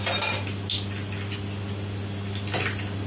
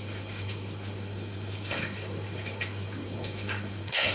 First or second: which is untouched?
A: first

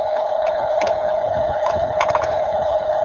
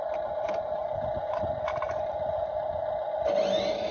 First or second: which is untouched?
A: second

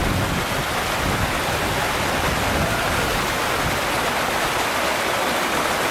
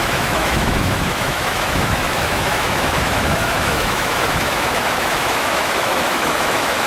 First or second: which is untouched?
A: first